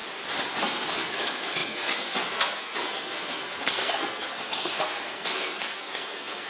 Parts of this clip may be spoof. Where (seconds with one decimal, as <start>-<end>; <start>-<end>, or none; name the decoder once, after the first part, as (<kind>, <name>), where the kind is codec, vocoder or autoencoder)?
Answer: 0.6-6.5 (codec, SNAC)